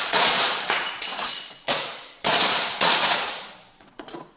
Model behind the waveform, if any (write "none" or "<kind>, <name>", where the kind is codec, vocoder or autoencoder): vocoder, Vocos